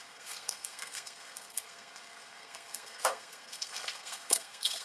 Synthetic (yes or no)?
yes